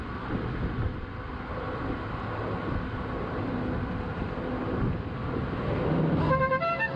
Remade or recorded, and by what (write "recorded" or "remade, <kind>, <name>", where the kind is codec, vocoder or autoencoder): recorded